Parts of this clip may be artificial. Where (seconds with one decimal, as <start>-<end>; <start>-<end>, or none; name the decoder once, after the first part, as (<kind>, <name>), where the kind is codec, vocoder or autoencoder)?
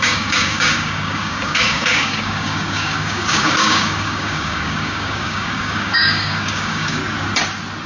0.0-7.0 (codec, DAC)